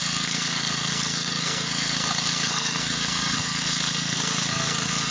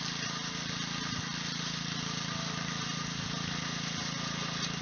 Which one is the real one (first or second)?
second